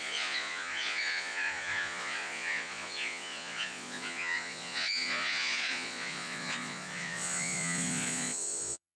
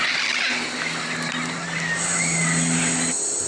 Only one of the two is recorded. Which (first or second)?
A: second